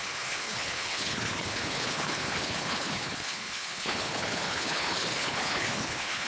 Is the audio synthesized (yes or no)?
yes